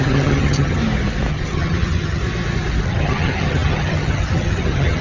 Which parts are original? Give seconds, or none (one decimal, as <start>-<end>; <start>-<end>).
0.8-1.3; 2.2-2.8